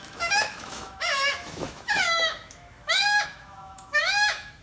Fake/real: fake